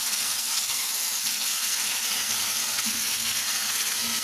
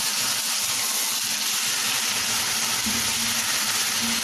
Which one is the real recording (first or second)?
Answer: second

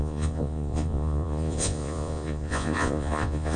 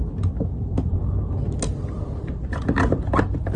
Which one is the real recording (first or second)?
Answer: second